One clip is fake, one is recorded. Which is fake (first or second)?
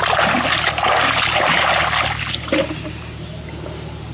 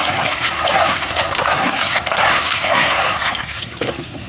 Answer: second